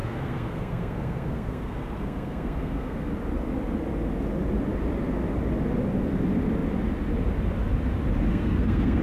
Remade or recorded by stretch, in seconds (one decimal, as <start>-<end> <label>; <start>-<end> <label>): 0.0-3.1 remade; 3.1-8.3 recorded; 8.3-9.0 remade